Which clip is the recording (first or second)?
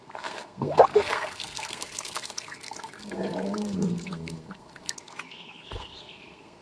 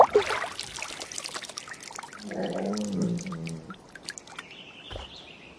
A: second